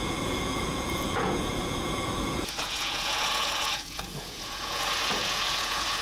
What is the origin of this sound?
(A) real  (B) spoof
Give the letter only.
B